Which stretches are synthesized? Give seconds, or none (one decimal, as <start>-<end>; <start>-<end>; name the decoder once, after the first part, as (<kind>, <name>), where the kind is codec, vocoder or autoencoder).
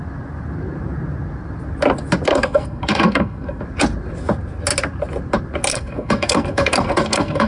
2.3-3.6 (codec, SNAC); 5.7-7.5